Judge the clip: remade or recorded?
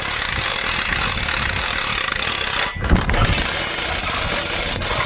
recorded